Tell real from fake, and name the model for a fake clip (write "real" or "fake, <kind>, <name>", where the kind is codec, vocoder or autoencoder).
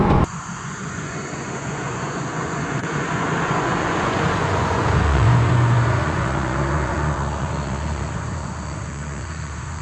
fake, vocoder, Vocos